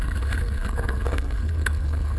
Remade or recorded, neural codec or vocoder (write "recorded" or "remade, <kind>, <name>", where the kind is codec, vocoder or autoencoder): remade, codec, SNAC